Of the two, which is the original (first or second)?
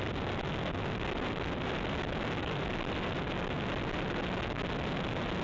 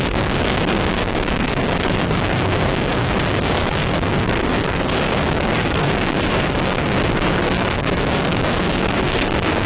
first